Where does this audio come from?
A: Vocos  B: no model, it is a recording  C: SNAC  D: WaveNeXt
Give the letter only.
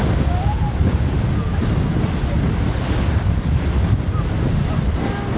B